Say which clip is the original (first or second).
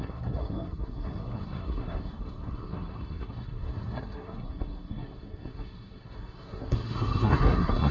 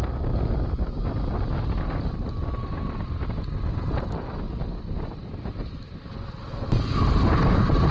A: second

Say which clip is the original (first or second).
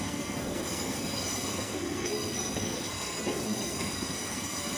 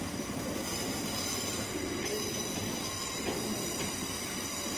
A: second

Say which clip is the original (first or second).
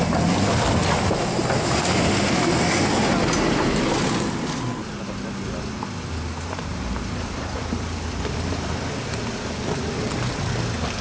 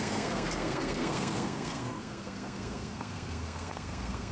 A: first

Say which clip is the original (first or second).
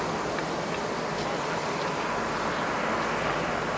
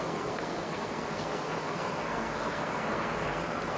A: first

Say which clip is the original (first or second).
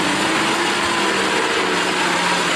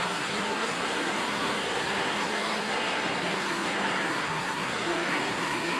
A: first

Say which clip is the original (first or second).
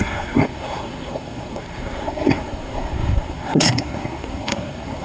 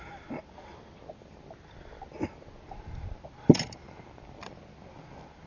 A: second